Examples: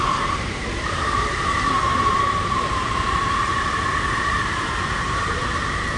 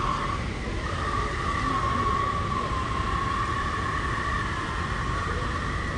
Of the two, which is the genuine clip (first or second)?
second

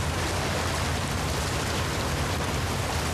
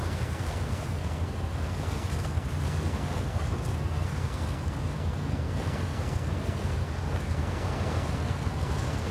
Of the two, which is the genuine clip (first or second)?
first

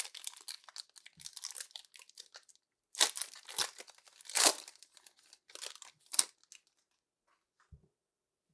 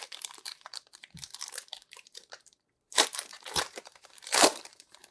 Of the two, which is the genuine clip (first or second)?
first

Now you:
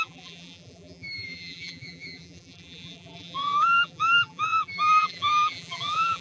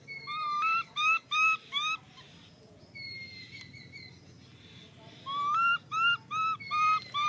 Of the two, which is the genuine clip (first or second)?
second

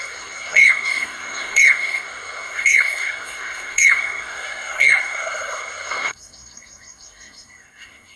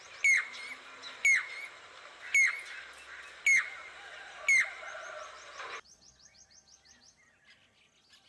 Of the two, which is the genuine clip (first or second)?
second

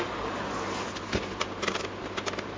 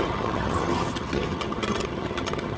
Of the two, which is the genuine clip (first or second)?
first